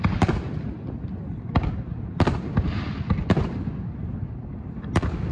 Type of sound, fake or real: real